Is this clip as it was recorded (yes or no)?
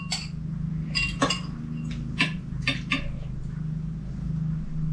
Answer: yes